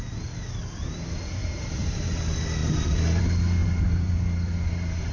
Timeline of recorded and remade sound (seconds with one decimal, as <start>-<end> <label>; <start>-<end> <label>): 0.0-1.4 recorded; 1.4-2.2 remade; 2.2-3.6 recorded; 3.6-5.1 remade